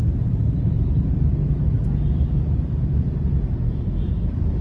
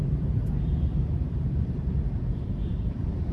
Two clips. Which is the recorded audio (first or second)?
first